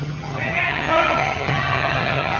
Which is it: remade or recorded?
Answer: remade